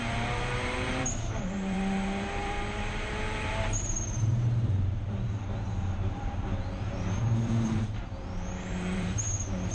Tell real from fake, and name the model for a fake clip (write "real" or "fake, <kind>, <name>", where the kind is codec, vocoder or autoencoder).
fake, vocoder, BigVGAN v2